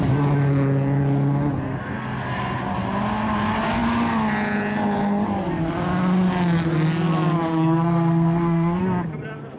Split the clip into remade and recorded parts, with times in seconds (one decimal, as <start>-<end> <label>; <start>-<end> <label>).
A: 0.0-7.6 recorded; 7.6-8.8 remade; 8.8-9.6 recorded